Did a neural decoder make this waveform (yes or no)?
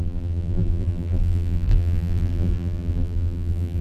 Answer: yes